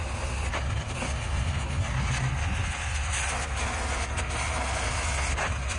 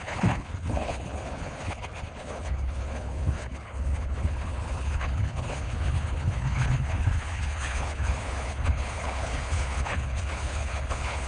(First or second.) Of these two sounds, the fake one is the second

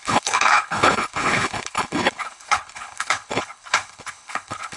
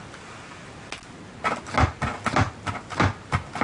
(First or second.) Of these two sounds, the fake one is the first